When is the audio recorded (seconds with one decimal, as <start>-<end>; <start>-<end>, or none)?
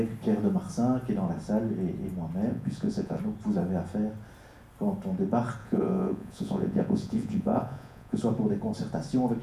0.0-2.5; 3.2-5.6; 8.2-9.4